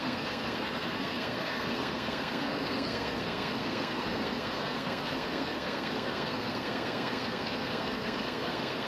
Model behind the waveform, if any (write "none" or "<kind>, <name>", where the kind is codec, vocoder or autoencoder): codec, SNAC